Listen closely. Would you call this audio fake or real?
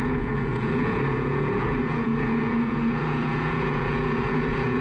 fake